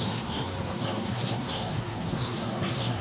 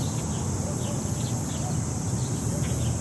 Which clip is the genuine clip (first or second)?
second